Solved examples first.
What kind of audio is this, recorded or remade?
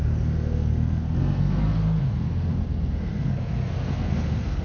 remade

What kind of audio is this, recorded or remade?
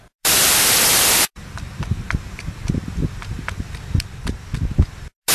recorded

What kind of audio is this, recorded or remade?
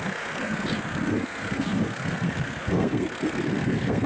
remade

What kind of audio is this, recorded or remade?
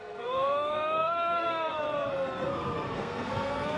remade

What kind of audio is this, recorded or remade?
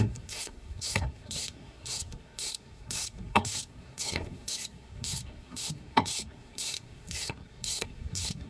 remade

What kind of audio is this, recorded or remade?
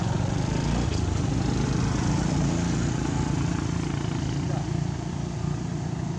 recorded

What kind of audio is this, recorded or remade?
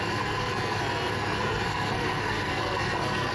remade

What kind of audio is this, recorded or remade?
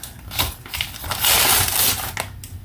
recorded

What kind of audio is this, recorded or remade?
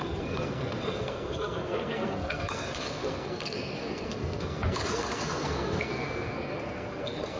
remade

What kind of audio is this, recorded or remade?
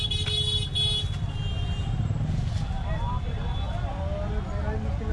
recorded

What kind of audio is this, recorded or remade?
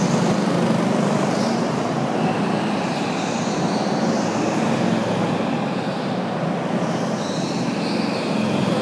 recorded